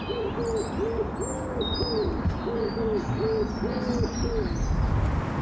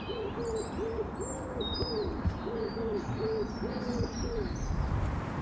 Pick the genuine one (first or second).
first